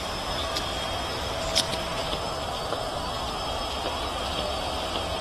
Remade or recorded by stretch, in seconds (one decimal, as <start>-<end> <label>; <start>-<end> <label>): 0.0-5.2 recorded